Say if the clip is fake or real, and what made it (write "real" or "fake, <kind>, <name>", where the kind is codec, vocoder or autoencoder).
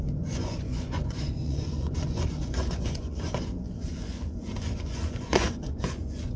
fake, vocoder, Vocos